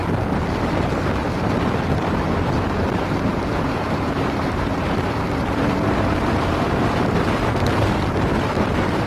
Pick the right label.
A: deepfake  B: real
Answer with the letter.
A